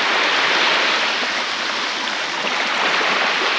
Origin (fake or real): real